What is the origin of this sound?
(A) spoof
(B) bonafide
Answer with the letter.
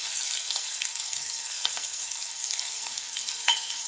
A